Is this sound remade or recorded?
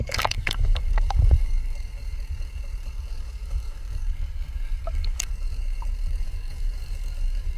remade